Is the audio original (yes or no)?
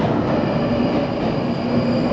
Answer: yes